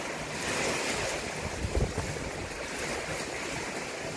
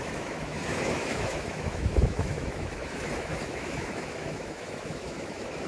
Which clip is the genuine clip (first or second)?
first